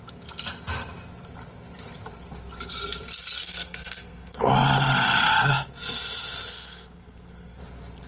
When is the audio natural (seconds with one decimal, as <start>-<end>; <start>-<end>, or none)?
0.0-3.4; 4.5-6.5; 7.6-8.1